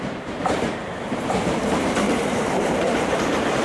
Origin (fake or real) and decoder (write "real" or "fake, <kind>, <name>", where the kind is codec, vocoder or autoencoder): fake, vocoder, BigVGAN v2